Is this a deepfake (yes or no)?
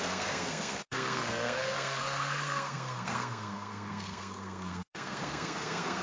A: yes